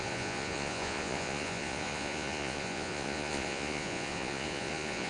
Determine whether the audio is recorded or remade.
remade